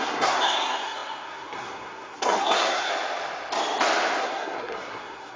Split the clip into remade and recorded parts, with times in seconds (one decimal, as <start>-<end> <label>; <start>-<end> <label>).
0.0-2.9 remade; 2.9-4.2 recorded; 4.2-5.4 remade